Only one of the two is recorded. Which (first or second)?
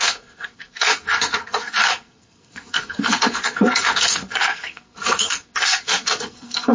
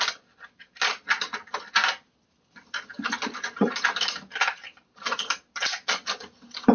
second